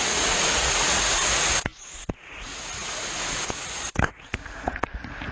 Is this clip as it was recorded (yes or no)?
no